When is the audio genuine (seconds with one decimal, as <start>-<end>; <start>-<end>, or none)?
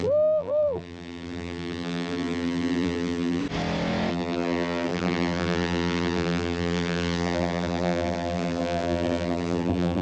3.4-4.1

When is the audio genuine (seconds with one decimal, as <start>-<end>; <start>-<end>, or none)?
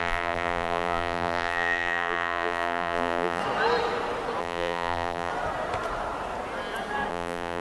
3.4-4.4; 5.3-7.1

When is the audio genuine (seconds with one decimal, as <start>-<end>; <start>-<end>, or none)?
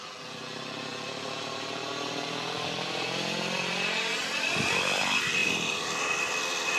0.0-0.9; 5.0-5.4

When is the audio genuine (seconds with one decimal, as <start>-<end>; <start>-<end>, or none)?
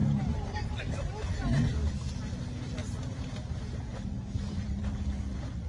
0.8-2.8; 4.9-5.7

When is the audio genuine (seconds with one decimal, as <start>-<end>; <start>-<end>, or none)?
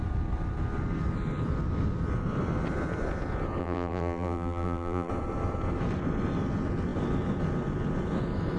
0.0-3.6; 5.1-8.6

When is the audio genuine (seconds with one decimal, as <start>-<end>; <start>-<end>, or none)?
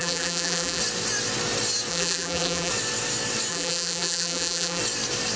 0.8-1.9; 2.7-3.5; 4.8-5.4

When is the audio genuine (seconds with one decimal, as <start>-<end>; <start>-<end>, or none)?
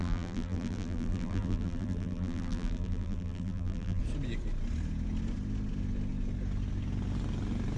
4.0-7.8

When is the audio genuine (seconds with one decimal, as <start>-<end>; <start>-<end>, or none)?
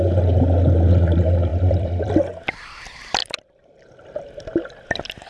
0.0-1.5; 2.1-3.2; 4.0-5.3